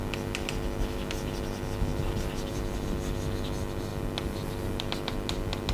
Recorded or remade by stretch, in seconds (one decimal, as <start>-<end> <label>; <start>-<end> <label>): 0.0-5.7 recorded